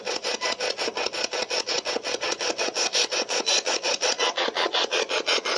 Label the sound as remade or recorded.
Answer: remade